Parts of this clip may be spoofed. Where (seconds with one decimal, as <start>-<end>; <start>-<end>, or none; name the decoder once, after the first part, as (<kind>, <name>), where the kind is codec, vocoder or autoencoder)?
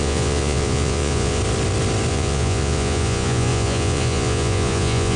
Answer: 0.0-1.4 (vocoder, Vocos); 2.1-5.2